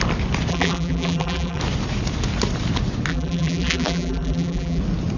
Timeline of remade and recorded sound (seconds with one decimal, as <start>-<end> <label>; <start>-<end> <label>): 0.0-0.5 recorded; 0.5-1.6 remade; 1.6-3.1 recorded; 3.1-4.8 remade; 4.8-5.2 recorded